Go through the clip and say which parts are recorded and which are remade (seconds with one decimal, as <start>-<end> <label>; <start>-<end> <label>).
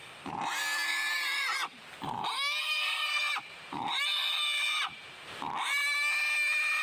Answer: 0.0-2.6 recorded; 2.6-3.2 remade; 3.2-6.8 recorded